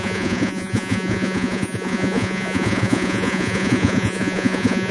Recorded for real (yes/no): no